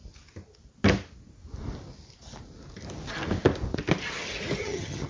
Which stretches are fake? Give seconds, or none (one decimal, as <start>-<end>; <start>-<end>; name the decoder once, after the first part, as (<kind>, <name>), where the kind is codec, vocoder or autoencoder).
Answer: 4.6-5.1 (vocoder, HiFi-GAN)